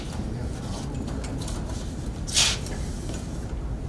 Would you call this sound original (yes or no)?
yes